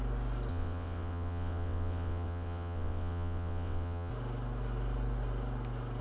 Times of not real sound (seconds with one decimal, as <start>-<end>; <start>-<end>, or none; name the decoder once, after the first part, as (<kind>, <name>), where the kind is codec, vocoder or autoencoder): 0.5-4.1 (vocoder, WaveNeXt)